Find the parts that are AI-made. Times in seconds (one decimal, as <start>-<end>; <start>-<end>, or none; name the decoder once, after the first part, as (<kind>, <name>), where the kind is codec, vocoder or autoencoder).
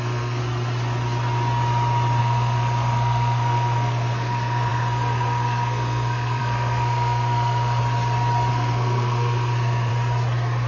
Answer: 0.0-0.4 (codec, SNAC); 2.2-7.8; 8.5-9.9